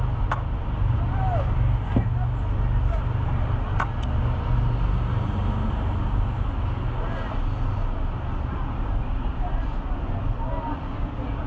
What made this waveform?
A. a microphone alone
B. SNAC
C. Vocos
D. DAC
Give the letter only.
A